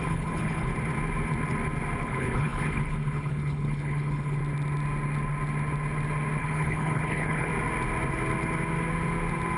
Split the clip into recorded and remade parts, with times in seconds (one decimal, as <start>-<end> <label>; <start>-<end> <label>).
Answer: 0.0-0.7 remade; 0.7-2.0 recorded; 2.0-4.4 remade; 4.4-6.4 recorded; 6.4-7.5 remade; 7.5-9.6 recorded